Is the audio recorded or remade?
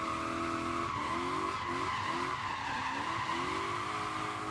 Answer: recorded